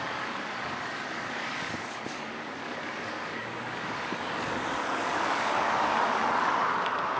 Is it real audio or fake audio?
fake